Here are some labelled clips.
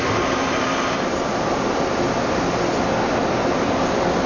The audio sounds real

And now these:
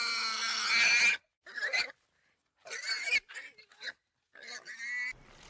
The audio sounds real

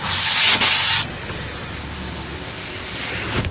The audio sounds real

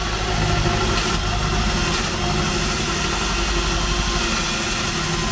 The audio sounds real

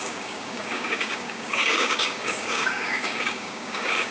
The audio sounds fake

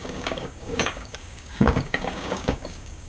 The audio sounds fake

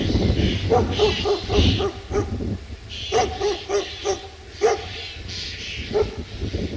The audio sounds real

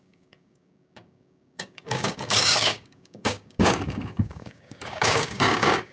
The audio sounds fake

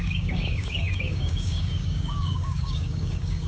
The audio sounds fake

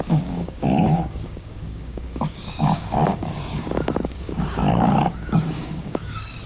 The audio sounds fake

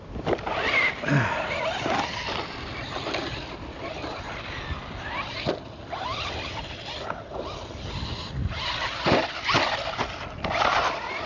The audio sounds real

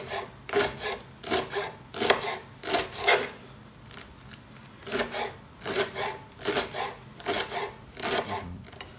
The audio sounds real